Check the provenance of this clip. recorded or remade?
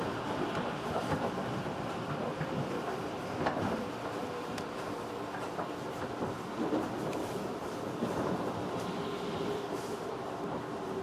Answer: remade